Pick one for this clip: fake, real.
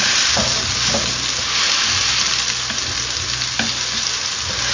real